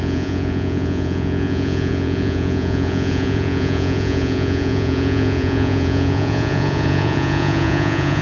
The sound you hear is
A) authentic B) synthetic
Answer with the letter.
B